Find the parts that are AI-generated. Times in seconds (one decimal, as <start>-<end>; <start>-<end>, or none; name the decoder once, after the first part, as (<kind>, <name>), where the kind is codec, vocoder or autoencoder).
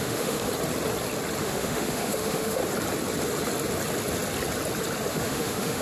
0.0-0.5 (autoencoder, DAC-VAE); 1.4-2.6; 5.1-5.8